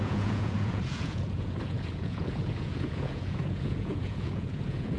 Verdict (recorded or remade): remade